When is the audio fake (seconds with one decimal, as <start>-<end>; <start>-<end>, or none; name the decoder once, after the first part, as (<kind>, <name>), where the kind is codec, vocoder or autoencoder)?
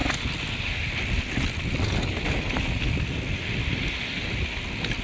none